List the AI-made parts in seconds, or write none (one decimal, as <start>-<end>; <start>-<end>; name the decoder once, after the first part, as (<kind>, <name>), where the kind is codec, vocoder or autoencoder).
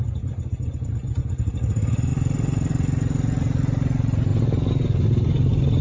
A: none